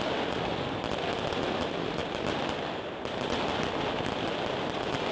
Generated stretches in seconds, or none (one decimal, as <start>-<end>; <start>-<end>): none